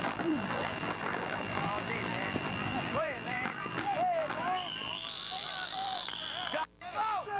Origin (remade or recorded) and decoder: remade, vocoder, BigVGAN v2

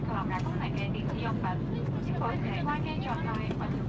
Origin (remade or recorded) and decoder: recorded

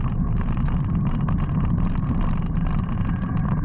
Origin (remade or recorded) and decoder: recorded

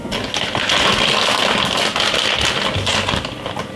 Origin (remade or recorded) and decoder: recorded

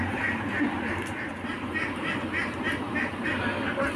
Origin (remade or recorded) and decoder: recorded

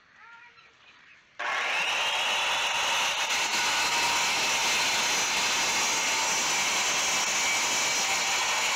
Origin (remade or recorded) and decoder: recorded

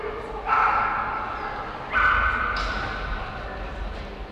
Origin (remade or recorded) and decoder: recorded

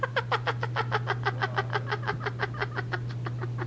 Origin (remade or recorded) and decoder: recorded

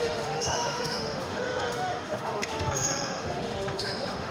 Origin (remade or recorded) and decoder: remade, autoencoder, DAC-VAE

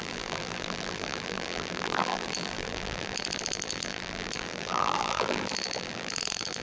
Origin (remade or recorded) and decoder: remade, vocoder, BigVGAN v2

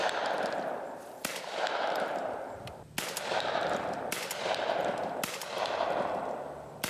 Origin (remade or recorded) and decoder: recorded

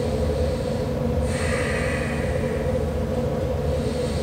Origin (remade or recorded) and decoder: recorded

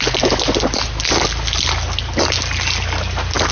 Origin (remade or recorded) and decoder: recorded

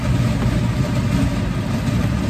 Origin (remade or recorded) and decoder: recorded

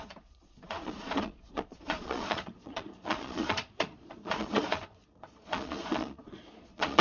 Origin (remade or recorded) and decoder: remade, vocoder, Vocos